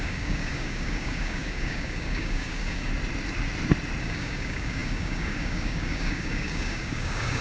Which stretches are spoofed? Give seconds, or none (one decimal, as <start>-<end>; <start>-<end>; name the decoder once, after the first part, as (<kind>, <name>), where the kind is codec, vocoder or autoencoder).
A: 0.0-2.9 (codec, DAC); 4.0-7.4